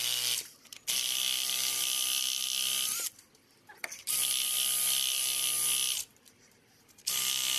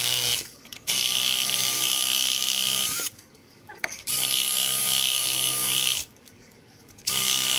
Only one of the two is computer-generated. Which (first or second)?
second